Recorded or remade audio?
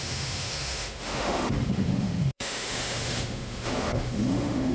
remade